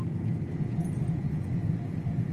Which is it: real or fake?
fake